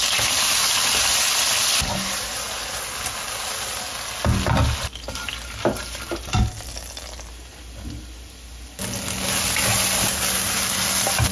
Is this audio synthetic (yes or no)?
no